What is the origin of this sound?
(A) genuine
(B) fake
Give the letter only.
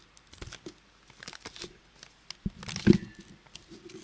A